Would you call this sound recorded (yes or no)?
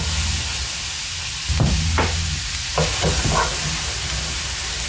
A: yes